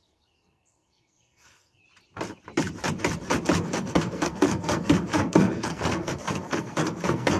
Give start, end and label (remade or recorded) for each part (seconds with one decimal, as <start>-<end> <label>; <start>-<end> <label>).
0.0-1.8 remade; 1.8-3.6 recorded; 3.6-7.4 remade